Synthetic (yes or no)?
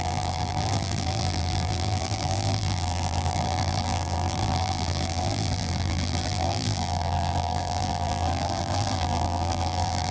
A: yes